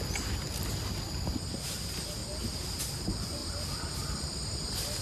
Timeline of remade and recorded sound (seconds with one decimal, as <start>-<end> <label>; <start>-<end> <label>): 0.0-5.0 recorded